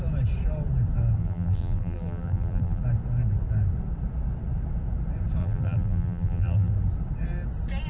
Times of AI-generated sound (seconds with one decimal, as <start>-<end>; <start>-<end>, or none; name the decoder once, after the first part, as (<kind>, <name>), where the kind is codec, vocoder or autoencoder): 1.2-2.8 (vocoder, BigVGAN v2); 5.4-6.7